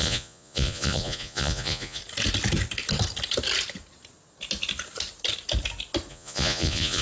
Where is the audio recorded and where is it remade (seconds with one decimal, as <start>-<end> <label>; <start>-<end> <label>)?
0.0-2.0 remade; 2.0-6.1 recorded; 6.1-7.0 remade